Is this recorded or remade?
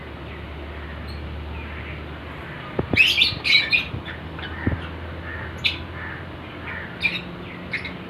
recorded